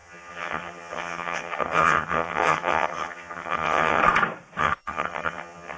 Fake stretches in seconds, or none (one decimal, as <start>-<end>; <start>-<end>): 0.0-4.0; 4.6-5.8